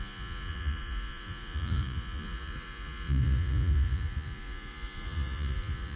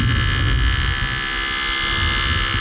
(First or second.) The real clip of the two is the second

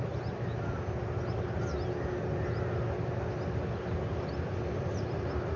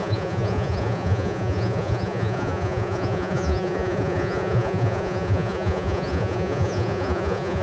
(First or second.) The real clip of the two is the first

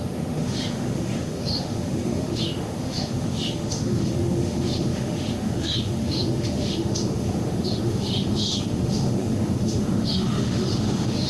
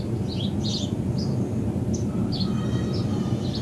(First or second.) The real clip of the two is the second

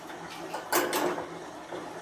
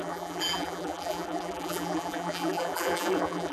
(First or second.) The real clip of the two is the first